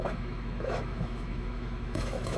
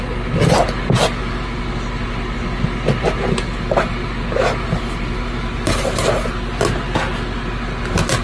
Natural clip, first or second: second